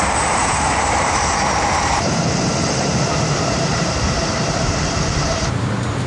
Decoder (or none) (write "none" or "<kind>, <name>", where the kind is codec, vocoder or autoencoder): vocoder, BigVGAN v2